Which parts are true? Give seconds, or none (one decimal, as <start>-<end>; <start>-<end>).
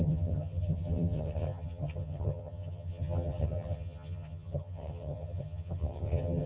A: none